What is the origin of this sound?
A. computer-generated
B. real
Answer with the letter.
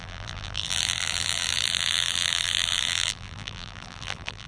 A